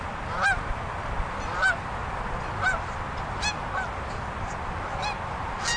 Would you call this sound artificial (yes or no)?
yes